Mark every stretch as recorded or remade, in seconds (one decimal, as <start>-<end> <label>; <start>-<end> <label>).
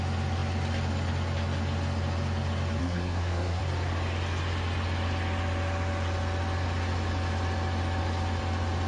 0.0-2.8 recorded; 2.8-3.6 remade; 3.6-8.9 recorded